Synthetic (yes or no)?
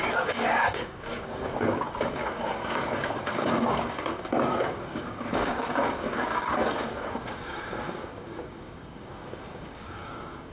yes